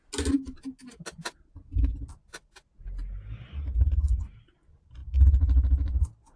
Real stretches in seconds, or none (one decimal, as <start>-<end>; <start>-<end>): 0.0-6.4